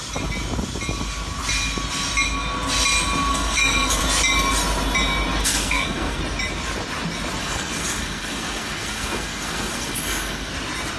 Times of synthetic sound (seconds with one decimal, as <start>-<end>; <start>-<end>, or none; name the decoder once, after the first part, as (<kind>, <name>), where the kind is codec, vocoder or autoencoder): 3.3-4.0 (codec, SNAC); 5.4-6.2; 7.4-10.5